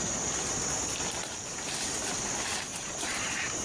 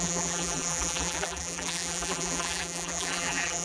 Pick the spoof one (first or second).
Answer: second